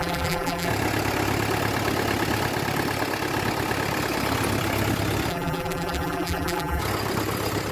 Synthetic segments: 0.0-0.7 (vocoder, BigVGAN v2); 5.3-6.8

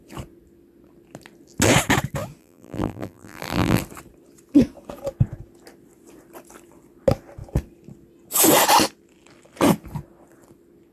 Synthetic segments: 2.4-3.8 (vocoder, BigVGAN v2)